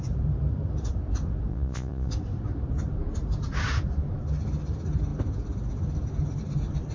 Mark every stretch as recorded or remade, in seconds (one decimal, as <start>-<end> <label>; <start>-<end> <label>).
0.0-1.5 recorded; 1.5-2.1 remade; 2.1-6.9 recorded